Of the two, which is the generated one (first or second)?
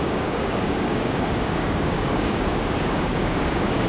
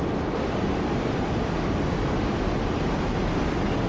first